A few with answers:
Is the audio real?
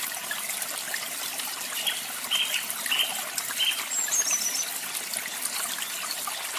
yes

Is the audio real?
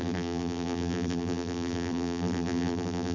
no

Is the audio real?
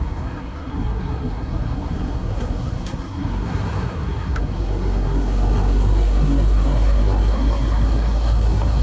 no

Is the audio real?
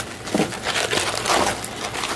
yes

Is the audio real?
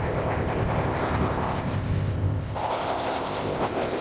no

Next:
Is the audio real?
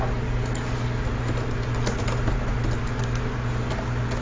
yes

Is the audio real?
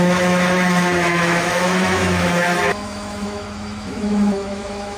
no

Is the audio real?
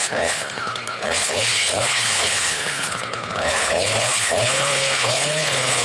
no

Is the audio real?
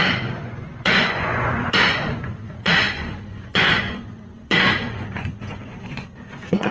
no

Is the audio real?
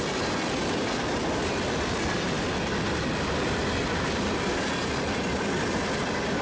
yes